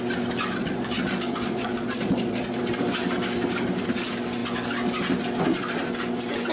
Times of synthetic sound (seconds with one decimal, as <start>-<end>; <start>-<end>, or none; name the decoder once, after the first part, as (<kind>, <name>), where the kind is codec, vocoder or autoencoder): 0.6-2.6 (vocoder, Vocos)